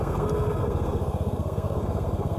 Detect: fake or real fake